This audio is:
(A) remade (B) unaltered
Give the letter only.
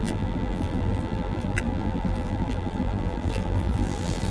A